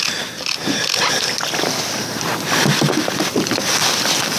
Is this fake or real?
real